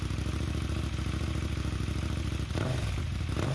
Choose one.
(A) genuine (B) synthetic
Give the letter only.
A